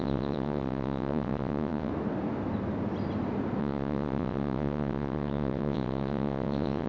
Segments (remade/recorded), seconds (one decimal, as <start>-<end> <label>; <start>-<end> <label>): 0.0-1.9 remade; 1.9-3.6 recorded; 3.6-6.9 remade